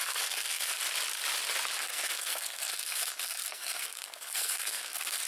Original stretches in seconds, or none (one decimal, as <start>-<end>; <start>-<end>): 0.8-1.8